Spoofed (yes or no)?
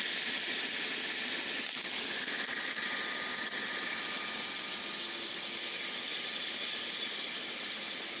no